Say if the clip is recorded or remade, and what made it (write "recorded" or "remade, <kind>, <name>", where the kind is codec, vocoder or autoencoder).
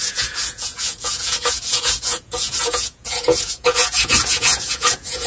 remade, vocoder, Vocos